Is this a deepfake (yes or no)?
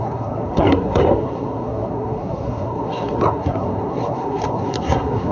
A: yes